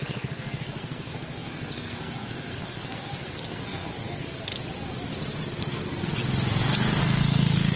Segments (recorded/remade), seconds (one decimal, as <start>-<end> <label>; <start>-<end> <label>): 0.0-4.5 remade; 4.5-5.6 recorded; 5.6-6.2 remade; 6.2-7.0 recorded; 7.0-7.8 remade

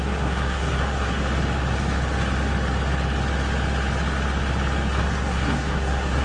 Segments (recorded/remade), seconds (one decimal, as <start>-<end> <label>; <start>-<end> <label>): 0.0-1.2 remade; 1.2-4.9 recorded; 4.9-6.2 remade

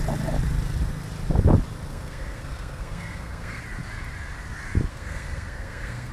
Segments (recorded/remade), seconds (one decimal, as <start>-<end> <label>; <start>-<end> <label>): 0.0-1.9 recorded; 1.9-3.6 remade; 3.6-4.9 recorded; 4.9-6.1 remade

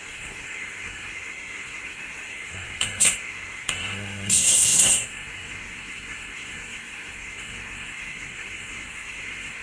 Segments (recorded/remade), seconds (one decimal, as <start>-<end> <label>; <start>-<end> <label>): 0.0-9.6 remade

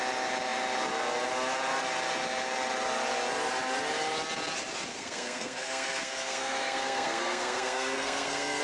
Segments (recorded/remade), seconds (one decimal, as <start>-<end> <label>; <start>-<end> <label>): 0.0-4.9 recorded; 4.9-8.6 remade

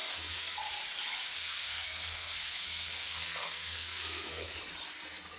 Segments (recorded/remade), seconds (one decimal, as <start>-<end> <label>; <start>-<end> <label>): 0.0-0.6 remade; 0.6-1.4 recorded; 1.4-4.6 remade; 4.6-5.4 recorded